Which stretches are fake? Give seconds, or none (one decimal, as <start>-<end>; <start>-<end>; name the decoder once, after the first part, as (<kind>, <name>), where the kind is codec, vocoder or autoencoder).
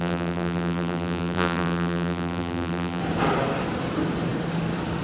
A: 0.0-3.0 (vocoder, BigVGAN v2)